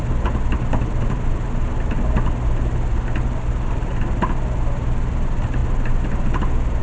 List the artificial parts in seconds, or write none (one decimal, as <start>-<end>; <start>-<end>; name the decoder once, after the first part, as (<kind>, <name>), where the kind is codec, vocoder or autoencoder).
none

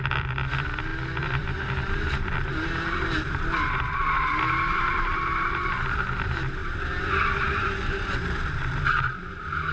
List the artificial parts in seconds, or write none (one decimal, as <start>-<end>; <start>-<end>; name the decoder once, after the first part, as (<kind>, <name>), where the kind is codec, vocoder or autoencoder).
0.0-6.6 (vocoder, BigVGAN v2); 7.4-9.7

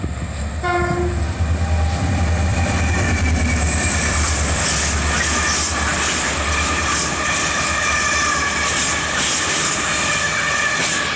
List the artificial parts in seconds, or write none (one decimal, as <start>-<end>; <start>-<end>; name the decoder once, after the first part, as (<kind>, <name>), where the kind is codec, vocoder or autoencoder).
2.5-4.6 (vocoder, BigVGAN v2); 5.9-8.0

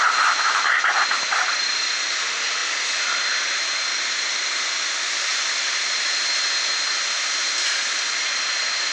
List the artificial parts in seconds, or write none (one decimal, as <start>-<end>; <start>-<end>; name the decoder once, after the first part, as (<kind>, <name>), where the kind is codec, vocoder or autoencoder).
3.9-4.6 (vocoder, BigVGAN v2); 5.3-6.7